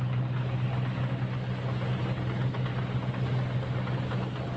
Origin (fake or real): real